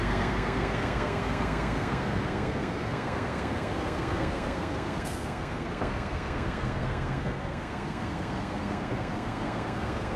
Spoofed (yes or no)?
yes